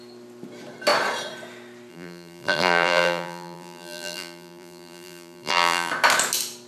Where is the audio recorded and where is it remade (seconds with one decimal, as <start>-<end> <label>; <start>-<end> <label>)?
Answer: 0.0-1.9 recorded; 1.9-5.9 remade; 5.9-6.7 recorded